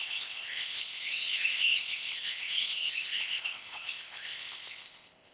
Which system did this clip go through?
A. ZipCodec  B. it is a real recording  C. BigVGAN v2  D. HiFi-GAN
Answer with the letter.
A